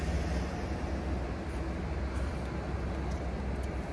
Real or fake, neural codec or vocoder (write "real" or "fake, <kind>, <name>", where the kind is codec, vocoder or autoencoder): real